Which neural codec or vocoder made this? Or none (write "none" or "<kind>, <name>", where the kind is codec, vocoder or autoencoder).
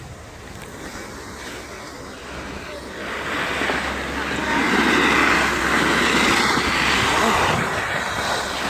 none